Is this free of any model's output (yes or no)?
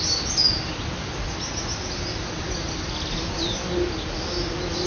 yes